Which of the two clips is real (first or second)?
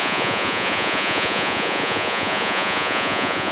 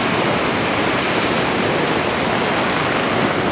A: second